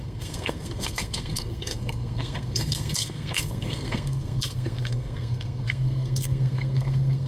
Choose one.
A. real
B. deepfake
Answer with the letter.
B